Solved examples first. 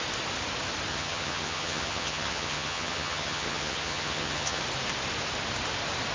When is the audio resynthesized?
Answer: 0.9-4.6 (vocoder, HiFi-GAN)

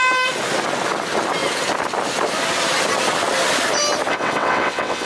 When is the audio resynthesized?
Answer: 4.1-5.1 (vocoder, WaveNeXt)

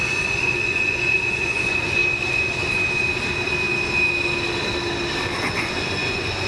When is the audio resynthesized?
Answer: 0.0-2.0 (vocoder, Vocos); 5.4-6.5

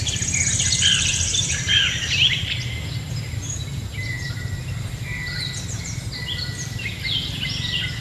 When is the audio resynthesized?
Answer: 0.0-8.0 (vocoder, BigVGAN v2)

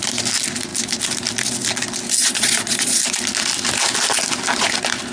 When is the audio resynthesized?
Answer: 2.2-3.0 (vocoder, Vocos)